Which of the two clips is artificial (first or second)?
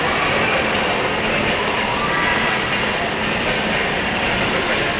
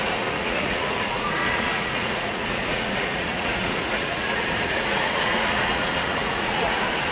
second